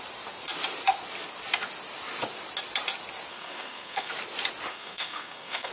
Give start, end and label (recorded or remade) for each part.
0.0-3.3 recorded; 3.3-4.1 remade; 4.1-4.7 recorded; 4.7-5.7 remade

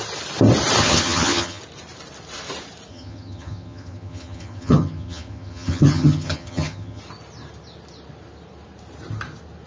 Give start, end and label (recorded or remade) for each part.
0.0-0.8 recorded; 0.8-1.6 remade; 1.6-2.9 recorded; 2.9-7.0 remade; 7.0-9.7 recorded

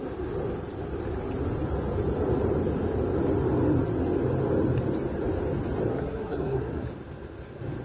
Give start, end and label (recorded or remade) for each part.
0.0-5.9 recorded; 5.9-6.9 remade; 6.9-7.8 recorded

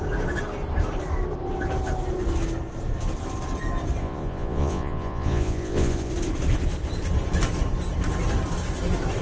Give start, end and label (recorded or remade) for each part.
0.0-4.0 recorded; 4.0-6.1 remade; 6.1-9.2 recorded